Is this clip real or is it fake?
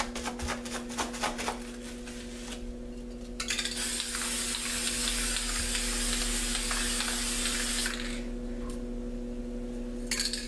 real